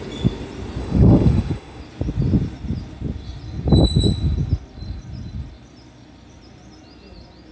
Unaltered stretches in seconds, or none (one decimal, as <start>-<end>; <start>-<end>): 0.0-0.8; 1.8-7.5